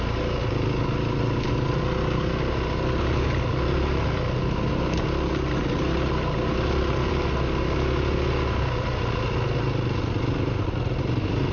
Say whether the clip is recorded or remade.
recorded